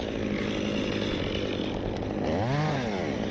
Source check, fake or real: real